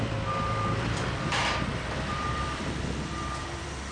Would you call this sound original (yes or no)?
no